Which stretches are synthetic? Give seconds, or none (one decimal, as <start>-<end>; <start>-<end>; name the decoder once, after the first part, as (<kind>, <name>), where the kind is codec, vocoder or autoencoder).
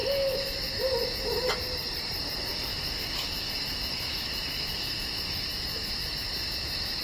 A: 0.0-1.5 (autoencoder, DAC-VAE); 2.7-7.0